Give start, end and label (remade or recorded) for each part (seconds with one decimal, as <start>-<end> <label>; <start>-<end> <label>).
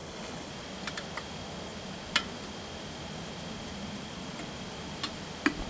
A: 0.0-0.5 remade; 0.5-5.7 recorded